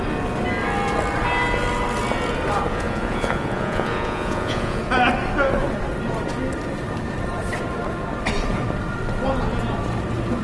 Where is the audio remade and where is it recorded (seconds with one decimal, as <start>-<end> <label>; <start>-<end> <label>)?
0.0-2.7 recorded; 2.7-4.8 remade; 4.8-10.4 recorded